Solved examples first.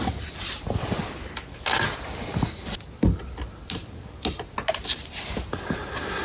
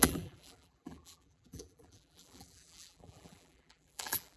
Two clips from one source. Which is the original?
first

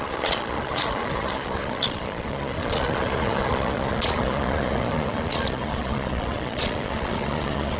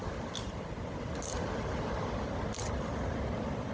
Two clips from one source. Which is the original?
second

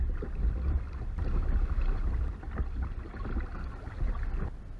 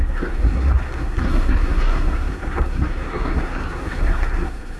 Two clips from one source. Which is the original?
first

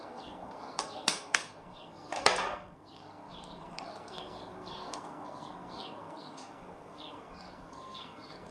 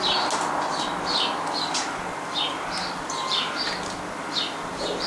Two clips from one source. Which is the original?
second